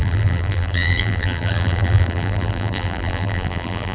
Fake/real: fake